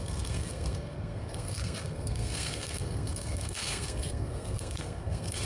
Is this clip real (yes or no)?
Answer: no